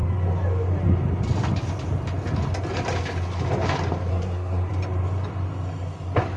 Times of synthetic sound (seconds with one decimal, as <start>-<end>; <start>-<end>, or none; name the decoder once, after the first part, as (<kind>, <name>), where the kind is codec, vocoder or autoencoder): 4.1-4.7 (codec, SNAC)